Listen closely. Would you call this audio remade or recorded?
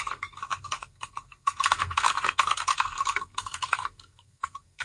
remade